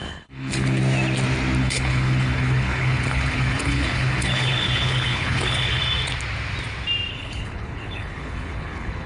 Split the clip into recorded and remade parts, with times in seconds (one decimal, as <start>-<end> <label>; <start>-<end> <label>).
0.0-0.8 remade; 0.8-1.6 recorded; 1.6-5.8 remade; 5.8-7.1 recorded; 7.1-9.1 remade